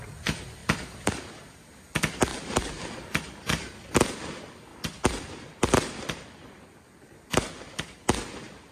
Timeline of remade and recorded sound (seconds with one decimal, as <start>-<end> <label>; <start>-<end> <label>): 0.0-2.3 recorded; 2.3-3.4 remade; 3.4-4.7 recorded; 4.7-7.4 remade; 7.4-8.7 recorded